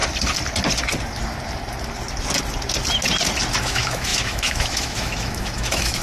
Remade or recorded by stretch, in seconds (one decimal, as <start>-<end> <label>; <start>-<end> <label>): 0.0-3.6 recorded; 3.6-6.0 remade